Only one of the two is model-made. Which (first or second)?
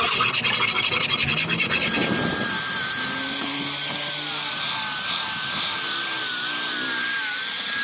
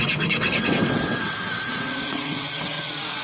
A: second